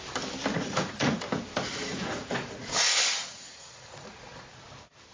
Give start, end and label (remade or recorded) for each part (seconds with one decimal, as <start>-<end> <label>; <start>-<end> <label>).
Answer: 0.0-0.5 recorded; 0.5-1.2 remade; 1.2-1.9 recorded; 1.9-2.7 remade; 2.7-3.2 recorded; 3.2-4.6 remade; 4.6-5.1 recorded